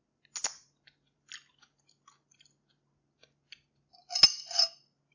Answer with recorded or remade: recorded